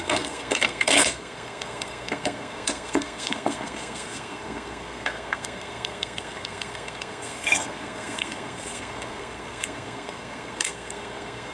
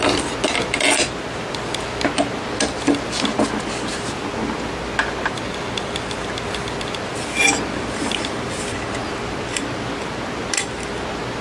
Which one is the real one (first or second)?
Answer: second